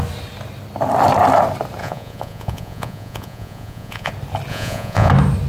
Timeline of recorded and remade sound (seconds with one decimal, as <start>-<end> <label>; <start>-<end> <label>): 0.0-1.8 recorded; 1.8-4.1 remade; 4.1-4.5 recorded; 4.5-5.1 remade; 5.1-5.5 recorded